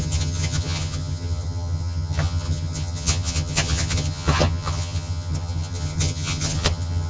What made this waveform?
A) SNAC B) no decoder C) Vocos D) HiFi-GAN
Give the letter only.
D